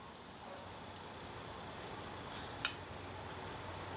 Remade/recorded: recorded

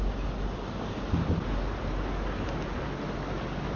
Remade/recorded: recorded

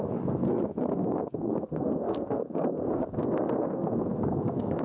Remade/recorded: remade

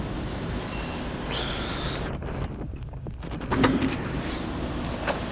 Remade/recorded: recorded